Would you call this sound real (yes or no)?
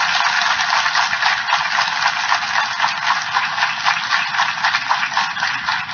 yes